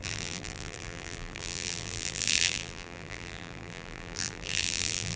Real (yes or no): no